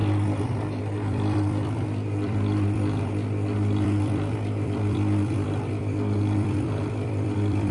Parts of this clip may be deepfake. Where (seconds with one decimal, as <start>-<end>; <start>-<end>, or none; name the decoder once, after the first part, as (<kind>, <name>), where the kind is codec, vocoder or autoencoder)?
0.0-7.7 (vocoder, BigVGAN v2)